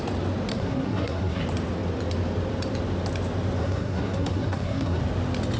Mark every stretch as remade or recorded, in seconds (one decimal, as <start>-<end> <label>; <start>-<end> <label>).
0.0-0.5 recorded; 0.5-1.4 remade; 1.4-3.6 recorded; 3.6-5.0 remade; 5.0-5.6 recorded